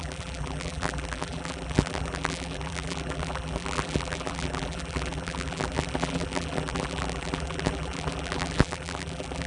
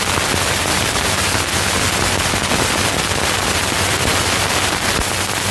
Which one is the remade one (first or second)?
first